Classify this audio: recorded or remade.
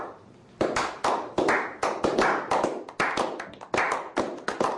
recorded